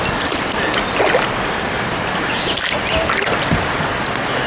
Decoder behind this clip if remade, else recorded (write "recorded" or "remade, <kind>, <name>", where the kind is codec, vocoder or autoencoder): recorded